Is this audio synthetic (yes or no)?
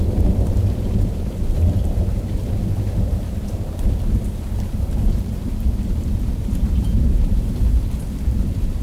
yes